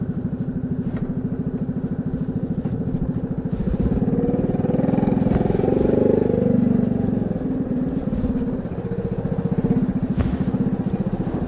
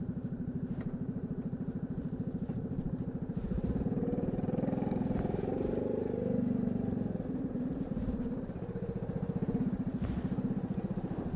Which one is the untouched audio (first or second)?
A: first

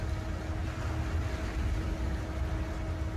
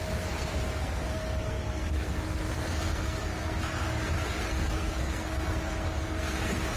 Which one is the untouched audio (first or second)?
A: first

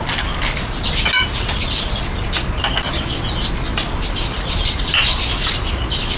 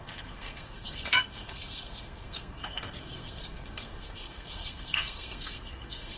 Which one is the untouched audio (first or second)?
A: first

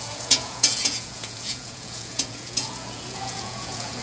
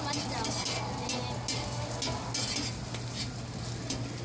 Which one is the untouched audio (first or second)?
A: second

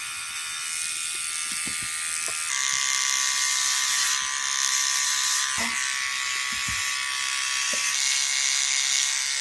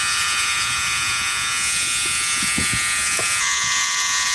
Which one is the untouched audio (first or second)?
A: first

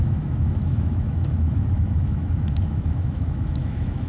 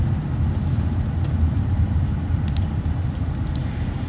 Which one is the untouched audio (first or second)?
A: second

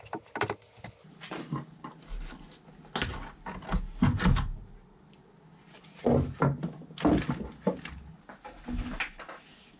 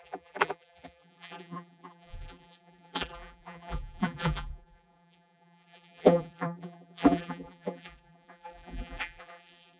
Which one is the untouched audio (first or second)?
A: first